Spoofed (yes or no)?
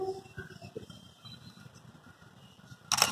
no